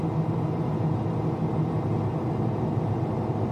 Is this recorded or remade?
recorded